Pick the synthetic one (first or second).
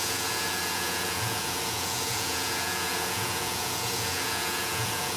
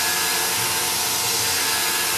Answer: first